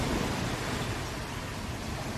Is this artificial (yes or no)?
no